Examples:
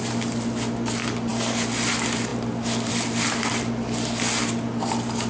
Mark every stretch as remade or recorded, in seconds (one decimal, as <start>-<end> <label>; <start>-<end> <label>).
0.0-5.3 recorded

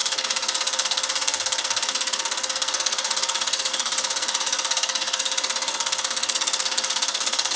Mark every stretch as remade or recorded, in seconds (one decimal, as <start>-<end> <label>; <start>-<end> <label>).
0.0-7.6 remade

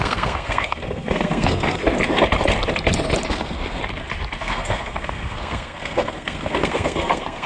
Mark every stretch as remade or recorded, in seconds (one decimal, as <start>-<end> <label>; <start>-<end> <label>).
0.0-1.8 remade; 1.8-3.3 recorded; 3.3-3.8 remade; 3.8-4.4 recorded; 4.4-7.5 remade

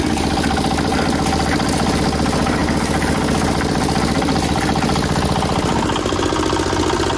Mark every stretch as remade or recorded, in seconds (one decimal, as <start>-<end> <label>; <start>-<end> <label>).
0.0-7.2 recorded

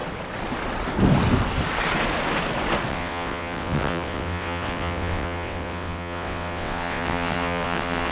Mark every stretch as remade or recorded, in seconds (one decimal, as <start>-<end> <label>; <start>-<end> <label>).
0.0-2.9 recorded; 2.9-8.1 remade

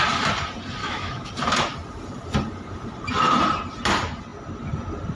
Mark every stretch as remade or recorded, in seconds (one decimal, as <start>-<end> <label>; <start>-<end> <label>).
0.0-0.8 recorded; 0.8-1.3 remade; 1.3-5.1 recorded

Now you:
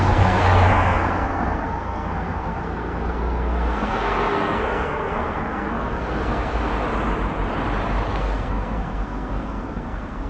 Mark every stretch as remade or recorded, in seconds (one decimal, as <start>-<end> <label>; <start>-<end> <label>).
0.0-6.7 remade; 6.7-8.1 recorded; 8.1-10.3 remade

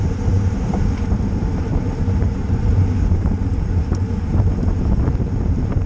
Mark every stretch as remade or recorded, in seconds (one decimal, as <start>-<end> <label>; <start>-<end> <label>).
0.0-5.9 remade